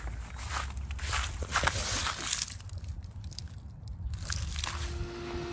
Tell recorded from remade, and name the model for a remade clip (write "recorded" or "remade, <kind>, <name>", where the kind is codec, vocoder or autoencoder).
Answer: recorded